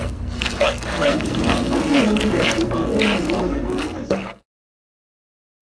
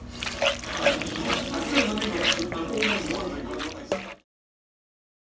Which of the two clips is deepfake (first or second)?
first